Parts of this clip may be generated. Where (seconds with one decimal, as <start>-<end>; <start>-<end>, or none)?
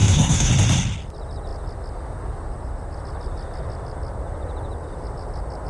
0.0-0.5